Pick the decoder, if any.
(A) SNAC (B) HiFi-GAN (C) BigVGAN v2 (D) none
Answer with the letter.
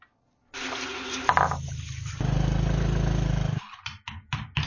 D